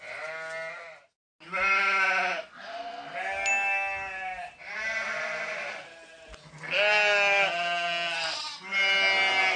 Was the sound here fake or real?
real